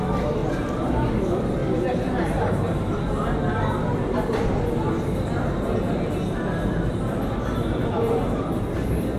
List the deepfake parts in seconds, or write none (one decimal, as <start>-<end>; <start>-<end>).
none